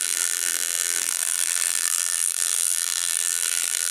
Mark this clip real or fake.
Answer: fake